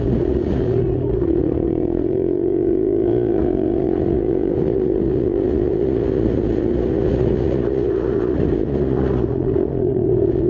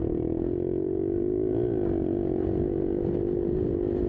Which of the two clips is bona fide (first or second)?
second